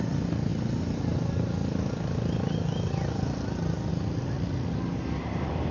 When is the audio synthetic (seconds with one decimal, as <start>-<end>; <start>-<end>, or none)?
none